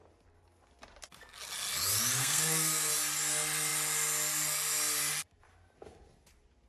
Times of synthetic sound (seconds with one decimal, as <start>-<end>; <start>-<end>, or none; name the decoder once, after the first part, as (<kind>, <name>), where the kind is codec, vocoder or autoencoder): 2.2-2.9 (codec, SNAC)